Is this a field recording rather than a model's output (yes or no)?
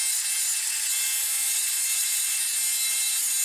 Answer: yes